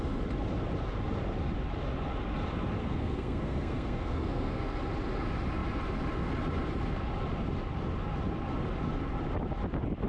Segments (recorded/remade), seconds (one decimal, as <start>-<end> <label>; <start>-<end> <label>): 0.0-2.8 recorded; 2.8-4.6 remade; 4.6-10.1 recorded